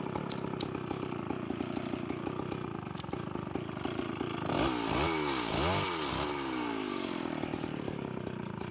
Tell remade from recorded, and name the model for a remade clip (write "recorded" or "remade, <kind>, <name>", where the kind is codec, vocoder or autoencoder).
recorded